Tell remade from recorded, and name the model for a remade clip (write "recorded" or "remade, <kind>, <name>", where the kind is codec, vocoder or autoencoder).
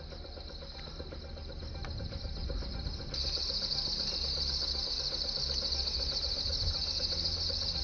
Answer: recorded